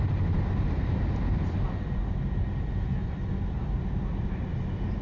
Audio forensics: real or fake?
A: real